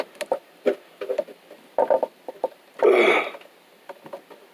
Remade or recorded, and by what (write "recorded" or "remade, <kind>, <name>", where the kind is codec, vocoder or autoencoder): recorded